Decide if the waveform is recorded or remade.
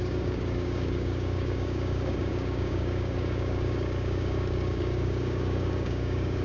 remade